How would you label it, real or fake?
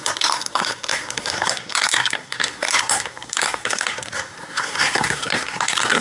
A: fake